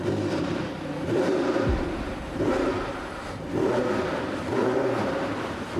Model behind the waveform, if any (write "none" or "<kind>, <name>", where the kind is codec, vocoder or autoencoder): vocoder, BigVGAN v2